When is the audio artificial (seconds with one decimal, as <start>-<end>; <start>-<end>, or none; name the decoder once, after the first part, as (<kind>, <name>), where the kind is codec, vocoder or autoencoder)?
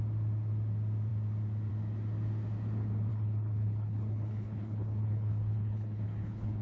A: 3.1-6.6 (codec, HILCodec)